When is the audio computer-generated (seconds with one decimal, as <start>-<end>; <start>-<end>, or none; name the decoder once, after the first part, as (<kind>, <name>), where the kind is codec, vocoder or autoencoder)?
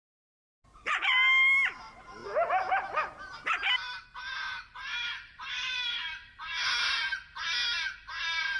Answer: none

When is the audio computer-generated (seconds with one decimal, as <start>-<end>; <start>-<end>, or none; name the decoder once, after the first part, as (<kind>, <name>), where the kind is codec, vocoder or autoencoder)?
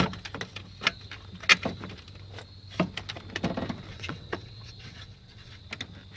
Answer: 3.9-5.6 (vocoder, WaveNeXt)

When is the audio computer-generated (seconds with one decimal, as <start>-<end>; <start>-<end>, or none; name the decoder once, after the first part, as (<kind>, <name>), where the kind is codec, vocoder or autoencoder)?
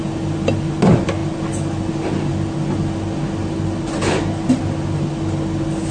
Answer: none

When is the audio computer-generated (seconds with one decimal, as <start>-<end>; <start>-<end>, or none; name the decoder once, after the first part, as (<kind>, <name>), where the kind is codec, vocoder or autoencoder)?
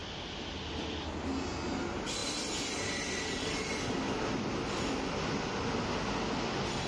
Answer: none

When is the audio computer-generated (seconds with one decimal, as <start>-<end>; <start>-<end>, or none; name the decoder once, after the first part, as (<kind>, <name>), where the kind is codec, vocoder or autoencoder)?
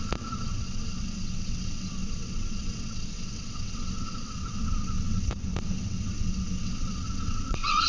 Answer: 0.0-7.9 (vocoder, WaveNeXt)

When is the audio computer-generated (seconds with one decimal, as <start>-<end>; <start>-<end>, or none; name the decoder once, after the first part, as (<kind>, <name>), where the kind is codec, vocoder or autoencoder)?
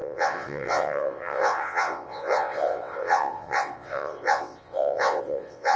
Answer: 0.0-5.8 (vocoder, WaveNeXt)